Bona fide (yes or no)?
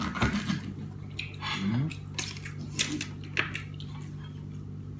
yes